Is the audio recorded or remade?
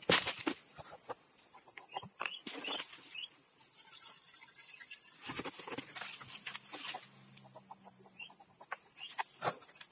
remade